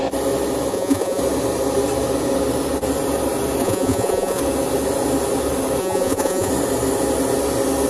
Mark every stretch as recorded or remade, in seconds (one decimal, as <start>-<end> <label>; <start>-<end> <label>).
0.0-0.7 recorded; 0.7-1.2 remade; 1.2-3.6 recorded; 3.6-4.4 remade; 4.4-5.8 recorded; 5.8-6.5 remade; 6.5-7.9 recorded